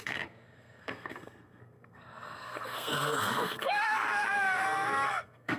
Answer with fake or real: fake